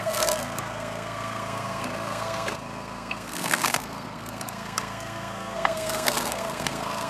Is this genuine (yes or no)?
no